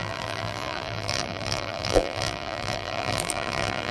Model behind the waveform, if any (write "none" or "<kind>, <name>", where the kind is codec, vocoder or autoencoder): vocoder, BigVGAN v2